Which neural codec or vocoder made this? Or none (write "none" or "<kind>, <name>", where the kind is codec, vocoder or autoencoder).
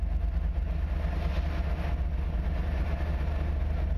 none